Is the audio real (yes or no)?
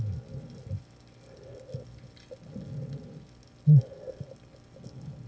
yes